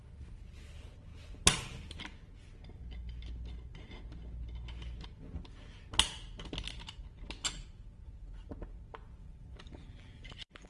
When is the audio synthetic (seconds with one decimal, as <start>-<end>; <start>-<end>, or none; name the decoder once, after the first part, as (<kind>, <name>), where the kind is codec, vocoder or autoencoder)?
9.2-10.7 (vocoder, BigVGAN v2)